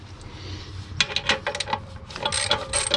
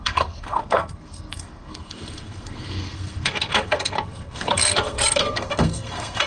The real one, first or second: first